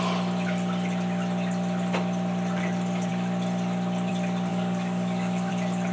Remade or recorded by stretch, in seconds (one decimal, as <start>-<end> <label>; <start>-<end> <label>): 0.0-4.5 recorded; 4.5-5.5 remade; 5.5-5.9 recorded